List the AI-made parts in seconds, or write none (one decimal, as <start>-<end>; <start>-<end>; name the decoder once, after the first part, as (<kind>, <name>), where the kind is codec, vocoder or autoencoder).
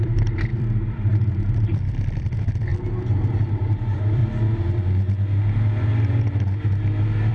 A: 0.0-2.7 (vocoder, BigVGAN v2); 3.2-4.2